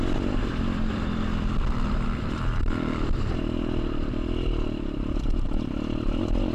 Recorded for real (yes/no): no